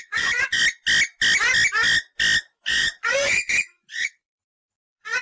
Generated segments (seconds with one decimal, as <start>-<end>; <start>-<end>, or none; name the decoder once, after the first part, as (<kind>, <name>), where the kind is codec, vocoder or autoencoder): 0.0-0.6 (vocoder, Vocos); 2.5-5.2